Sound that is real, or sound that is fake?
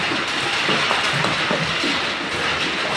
real